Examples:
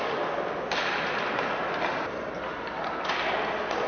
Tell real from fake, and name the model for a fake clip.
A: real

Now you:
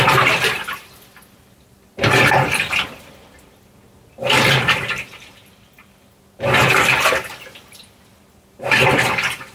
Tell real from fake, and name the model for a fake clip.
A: real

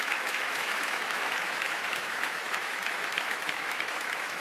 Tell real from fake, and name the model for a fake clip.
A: fake, autoencoder, DAC-VAE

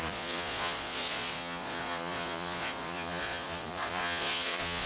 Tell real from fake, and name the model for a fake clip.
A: fake, vocoder, Vocos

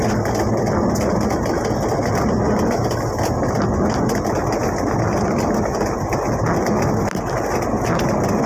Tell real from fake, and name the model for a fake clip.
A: real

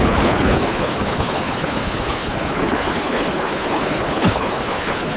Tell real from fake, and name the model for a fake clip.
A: fake, codec, HILCodec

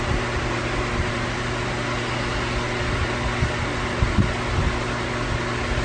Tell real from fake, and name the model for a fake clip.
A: real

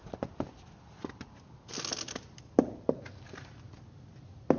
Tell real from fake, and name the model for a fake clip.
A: real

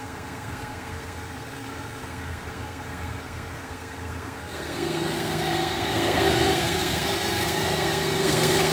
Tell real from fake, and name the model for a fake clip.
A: fake, codec, SNAC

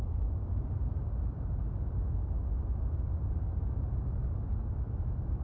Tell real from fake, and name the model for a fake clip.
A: real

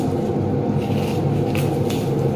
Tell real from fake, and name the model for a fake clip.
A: real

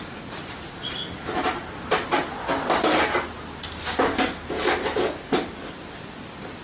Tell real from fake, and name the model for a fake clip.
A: real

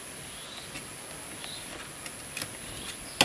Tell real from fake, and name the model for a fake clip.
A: real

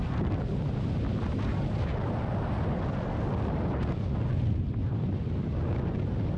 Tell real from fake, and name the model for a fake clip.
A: real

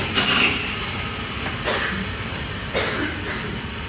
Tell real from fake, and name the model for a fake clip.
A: real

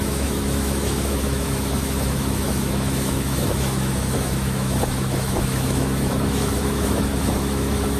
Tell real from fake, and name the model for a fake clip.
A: fake, autoencoder, DAC-VAE